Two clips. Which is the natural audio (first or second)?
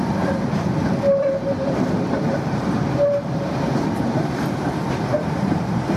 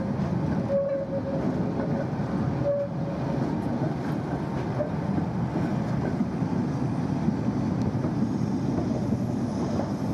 second